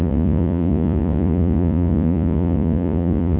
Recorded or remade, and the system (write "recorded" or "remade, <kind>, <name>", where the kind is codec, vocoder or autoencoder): remade, vocoder, Vocos